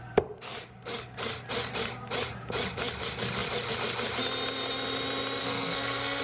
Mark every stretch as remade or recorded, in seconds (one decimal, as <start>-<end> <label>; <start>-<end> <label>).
0.0-5.4 recorded; 5.4-6.2 remade